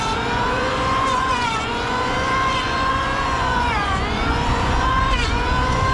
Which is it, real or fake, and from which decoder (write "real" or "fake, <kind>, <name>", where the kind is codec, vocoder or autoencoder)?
fake, vocoder, Vocos